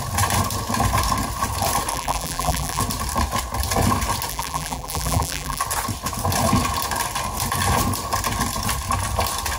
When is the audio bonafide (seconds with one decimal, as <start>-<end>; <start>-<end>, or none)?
0.0-1.9; 2.8-4.3; 5.6-9.6